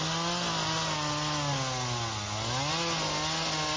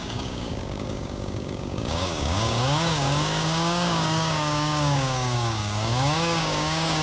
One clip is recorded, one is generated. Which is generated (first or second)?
second